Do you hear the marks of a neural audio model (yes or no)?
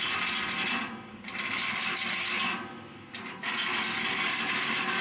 no